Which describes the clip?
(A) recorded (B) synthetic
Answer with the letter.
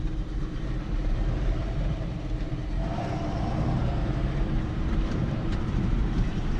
B